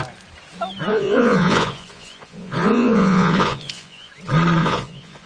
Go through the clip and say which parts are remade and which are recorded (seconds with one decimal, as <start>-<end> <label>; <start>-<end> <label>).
0.0-0.9 recorded; 0.9-4.1 remade; 4.1-4.6 recorded; 4.6-5.3 remade